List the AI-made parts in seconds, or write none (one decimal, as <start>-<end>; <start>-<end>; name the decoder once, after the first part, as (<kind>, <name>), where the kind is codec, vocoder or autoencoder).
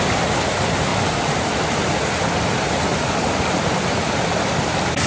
none